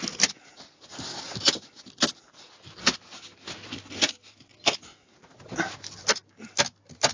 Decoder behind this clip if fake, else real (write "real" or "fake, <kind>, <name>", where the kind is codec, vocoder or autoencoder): real